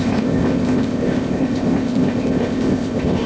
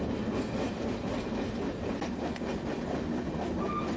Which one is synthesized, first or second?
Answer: first